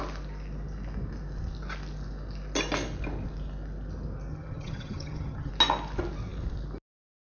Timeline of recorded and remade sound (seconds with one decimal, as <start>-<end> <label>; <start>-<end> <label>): 0.0-4.3 recorded; 4.3-5.5 remade; 5.5-7.2 recorded